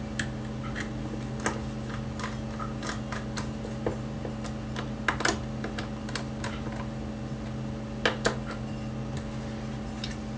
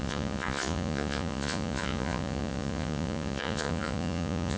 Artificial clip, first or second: second